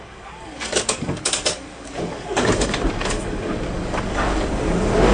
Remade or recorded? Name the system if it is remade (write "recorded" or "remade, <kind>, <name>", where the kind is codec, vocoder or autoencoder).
remade, codec, DAC